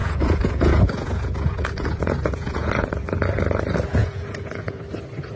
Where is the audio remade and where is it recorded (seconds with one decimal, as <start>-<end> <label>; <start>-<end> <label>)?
0.0-2.7 remade; 2.7-4.0 recorded; 4.0-4.8 remade; 4.8-5.4 recorded